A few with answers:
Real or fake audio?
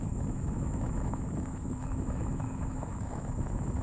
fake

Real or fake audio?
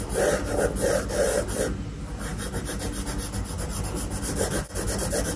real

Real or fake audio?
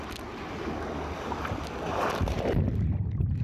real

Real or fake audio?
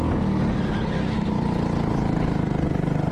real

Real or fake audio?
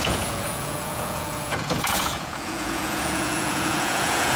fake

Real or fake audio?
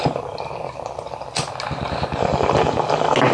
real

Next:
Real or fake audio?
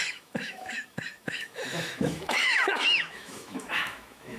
fake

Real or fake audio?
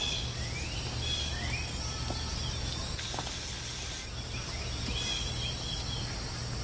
real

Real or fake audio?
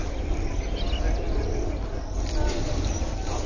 real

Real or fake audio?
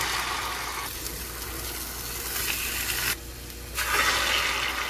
real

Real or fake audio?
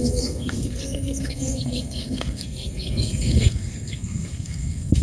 fake